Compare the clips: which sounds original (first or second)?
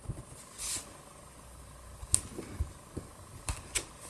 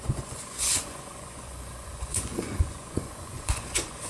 first